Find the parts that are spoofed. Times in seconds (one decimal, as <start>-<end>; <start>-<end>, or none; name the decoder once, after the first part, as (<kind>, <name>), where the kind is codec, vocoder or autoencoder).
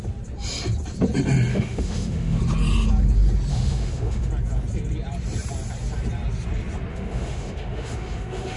1.5-2.4 (autoencoder, DAC-VAE); 3.5-4.3; 6.9-8.6